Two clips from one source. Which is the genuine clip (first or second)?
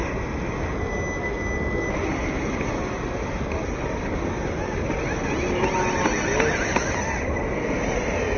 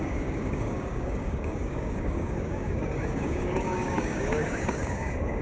first